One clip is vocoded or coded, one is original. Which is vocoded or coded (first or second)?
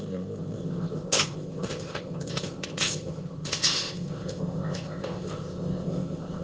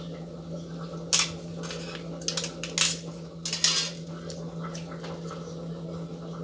first